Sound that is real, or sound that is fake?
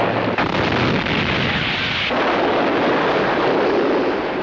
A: real